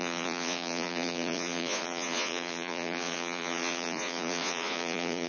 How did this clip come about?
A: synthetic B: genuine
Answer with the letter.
A